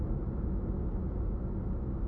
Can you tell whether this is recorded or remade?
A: recorded